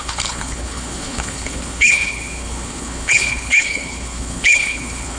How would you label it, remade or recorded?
remade